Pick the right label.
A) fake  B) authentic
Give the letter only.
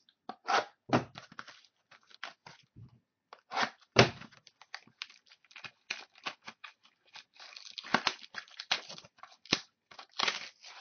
B